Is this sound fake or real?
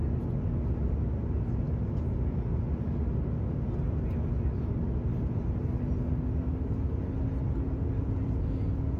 real